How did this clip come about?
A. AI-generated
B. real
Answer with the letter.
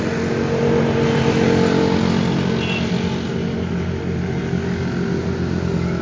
B